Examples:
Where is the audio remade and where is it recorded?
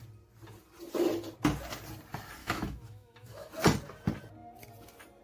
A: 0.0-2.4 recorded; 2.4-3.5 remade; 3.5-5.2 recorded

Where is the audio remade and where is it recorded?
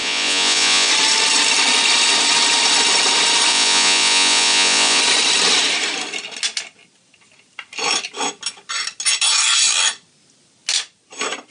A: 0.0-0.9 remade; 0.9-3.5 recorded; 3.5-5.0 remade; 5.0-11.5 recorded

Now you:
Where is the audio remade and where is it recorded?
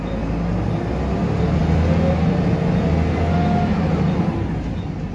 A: 0.0-5.1 recorded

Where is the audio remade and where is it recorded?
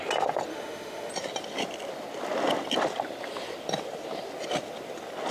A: 0.0-0.5 recorded; 0.5-1.1 remade; 1.1-5.3 recorded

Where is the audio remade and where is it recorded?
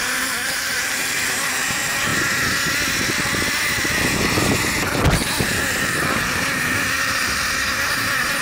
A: 0.0-2.1 remade; 2.1-5.4 recorded; 5.4-8.4 remade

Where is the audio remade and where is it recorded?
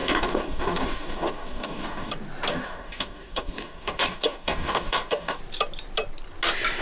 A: 0.0-2.1 remade; 2.1-2.5 recorded; 2.5-5.4 remade; 5.4-6.8 recorded